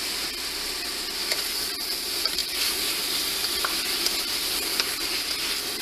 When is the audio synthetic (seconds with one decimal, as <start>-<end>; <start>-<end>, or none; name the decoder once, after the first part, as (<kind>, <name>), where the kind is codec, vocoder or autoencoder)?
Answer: 2.4-5.3 (vocoder, BigVGAN v2)